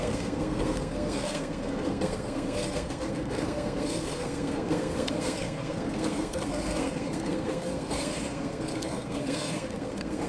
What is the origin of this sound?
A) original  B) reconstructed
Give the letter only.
B